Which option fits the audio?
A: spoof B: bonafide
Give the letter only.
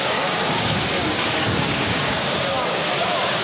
A